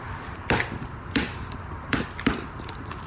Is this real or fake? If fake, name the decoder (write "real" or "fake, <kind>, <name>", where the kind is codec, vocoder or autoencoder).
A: real